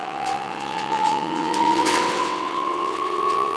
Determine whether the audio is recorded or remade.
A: remade